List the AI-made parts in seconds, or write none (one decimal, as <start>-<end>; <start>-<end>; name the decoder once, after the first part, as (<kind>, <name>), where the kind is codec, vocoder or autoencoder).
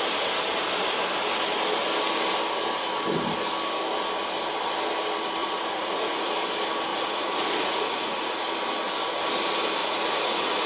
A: 5.4-6.3 (vocoder, Vocos); 6.9-8.4; 9.8-10.7